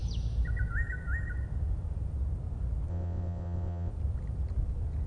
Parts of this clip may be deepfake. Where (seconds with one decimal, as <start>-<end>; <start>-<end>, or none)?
2.9-3.9

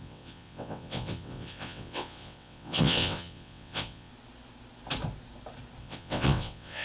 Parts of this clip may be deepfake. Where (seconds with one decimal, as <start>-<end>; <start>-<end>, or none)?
0.0-4.1; 5.8-6.8

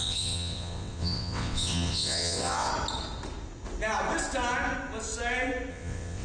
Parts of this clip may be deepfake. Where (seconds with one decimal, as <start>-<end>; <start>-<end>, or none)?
0.0-2.7; 5.7-6.2

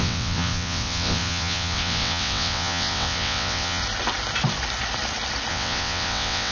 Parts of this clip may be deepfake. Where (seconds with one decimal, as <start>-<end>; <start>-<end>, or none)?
0.0-3.8; 5.5-6.5

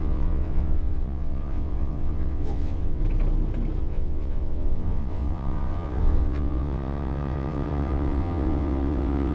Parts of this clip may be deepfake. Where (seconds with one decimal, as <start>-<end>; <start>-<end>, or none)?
0.0-3.0; 3.8-9.3

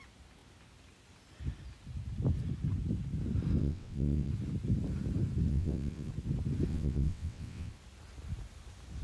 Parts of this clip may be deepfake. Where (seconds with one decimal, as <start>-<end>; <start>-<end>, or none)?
3.6-4.3; 5.5-6.1; 6.7-7.7

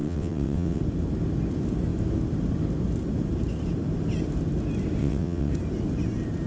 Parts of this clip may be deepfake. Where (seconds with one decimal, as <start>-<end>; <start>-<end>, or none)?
0.0-0.8; 5.0-5.5